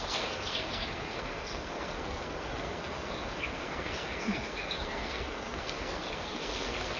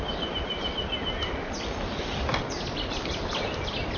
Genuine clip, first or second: second